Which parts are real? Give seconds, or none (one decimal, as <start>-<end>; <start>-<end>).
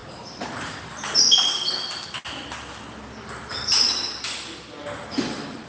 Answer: 1.2-5.7